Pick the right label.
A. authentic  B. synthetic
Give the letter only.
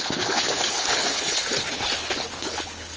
B